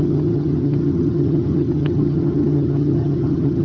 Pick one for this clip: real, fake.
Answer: fake